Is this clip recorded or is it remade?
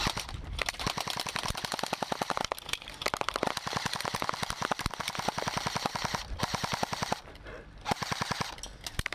recorded